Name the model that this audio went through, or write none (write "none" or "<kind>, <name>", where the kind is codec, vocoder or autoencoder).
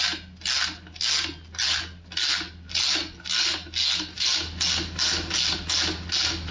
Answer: none